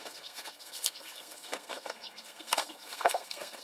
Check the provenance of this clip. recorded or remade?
remade